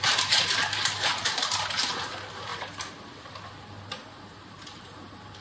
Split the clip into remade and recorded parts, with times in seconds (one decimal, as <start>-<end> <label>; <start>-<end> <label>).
0.0-2.5 remade; 2.5-4.1 recorded; 4.1-5.4 remade